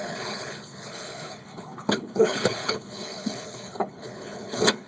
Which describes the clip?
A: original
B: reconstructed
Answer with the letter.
B